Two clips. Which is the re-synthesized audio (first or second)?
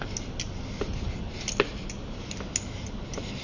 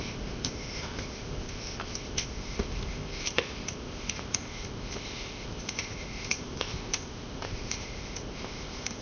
second